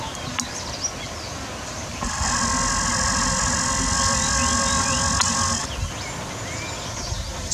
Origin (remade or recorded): recorded